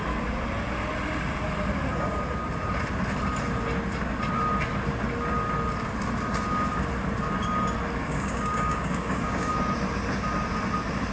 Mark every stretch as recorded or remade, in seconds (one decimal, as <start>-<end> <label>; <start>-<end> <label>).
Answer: 0.0-8.0 recorded; 8.0-9.5 remade; 9.5-11.1 recorded